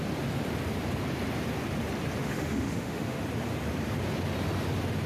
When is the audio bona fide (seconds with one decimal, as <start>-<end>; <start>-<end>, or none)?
0.0-2.2; 3.2-5.1